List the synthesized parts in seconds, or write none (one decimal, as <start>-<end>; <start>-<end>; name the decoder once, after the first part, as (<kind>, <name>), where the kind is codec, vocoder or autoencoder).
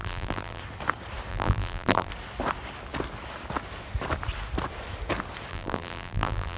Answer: 0.0-0.6 (vocoder, BigVGAN v2); 1.3-2.1; 5.5-6.6